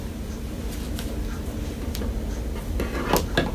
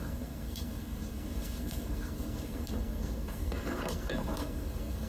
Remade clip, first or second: second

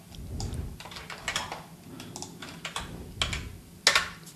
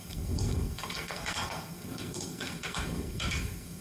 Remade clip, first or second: second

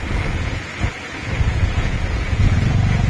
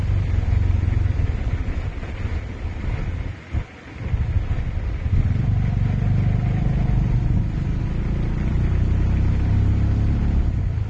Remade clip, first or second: first